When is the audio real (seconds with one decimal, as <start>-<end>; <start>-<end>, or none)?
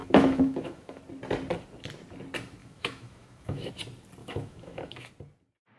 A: 1.0-2.6; 3.7-4.2; 5.1-5.8